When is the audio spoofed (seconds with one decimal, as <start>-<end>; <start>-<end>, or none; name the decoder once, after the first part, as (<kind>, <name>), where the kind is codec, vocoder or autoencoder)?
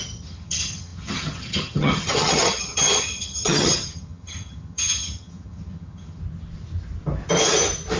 0.0-6.2 (vocoder, HiFi-GAN)